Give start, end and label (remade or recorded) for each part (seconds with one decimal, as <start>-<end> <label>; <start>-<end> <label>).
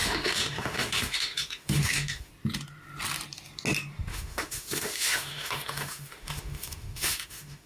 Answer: 0.0-2.3 remade; 2.3-4.1 recorded; 4.1-7.7 remade